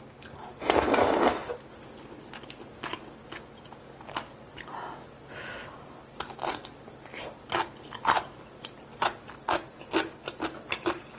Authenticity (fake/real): real